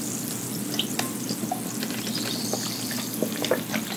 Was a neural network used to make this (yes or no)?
no